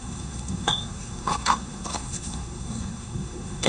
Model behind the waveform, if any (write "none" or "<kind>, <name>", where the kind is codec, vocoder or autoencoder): codec, SNAC